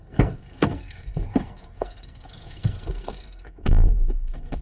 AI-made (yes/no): yes